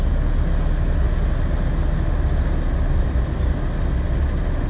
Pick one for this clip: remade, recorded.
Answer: recorded